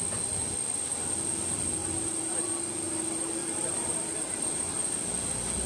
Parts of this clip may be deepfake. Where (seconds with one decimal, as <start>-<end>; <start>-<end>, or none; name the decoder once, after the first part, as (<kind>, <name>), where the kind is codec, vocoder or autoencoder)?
1.8-2.5 (vocoder, BigVGAN v2); 3.4-4.8